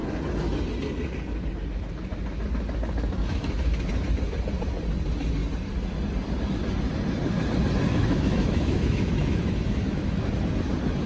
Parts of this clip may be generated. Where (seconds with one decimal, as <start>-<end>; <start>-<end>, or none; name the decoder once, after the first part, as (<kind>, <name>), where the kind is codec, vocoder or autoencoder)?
3.2-4.1 (autoencoder, DAC-VAE); 7.9-10.3